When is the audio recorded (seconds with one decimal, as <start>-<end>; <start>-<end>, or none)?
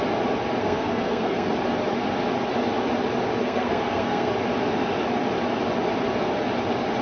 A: 0.0-0.6; 1.5-3.4; 4.3-7.0